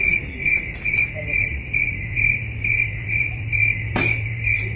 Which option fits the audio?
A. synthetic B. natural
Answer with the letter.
A